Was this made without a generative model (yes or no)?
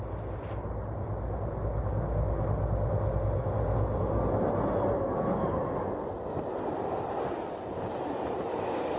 yes